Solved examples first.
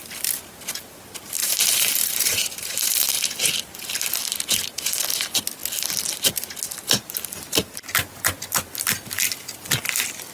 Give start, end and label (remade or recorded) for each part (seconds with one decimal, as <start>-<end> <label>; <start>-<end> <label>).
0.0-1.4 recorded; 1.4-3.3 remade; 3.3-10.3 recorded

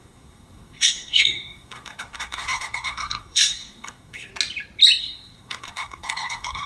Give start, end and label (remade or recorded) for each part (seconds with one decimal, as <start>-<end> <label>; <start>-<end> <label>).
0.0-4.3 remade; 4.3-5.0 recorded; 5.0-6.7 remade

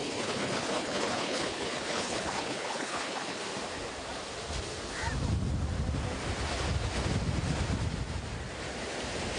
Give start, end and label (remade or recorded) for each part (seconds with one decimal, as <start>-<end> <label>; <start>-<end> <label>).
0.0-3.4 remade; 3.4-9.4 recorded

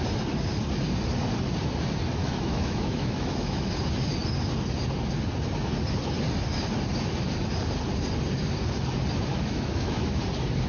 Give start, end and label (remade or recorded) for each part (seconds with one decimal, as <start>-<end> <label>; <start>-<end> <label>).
0.0-2.2 recorded; 2.2-3.7 remade; 3.7-9.3 recorded; 9.3-10.2 remade; 10.2-10.7 recorded

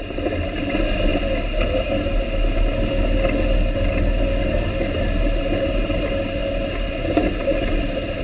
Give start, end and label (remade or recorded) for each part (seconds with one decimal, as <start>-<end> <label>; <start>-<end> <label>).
0.0-1.1 remade; 1.1-5.4 recorded; 5.4-6.4 remade; 6.4-6.9 recorded; 6.9-8.2 remade